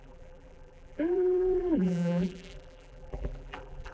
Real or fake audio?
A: fake